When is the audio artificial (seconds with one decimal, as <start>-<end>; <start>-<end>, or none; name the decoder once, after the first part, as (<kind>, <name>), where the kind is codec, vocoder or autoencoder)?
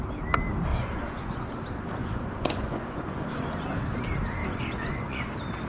0.7-1.5 (vocoder, Vocos); 2.0-3.7; 4.4-5.3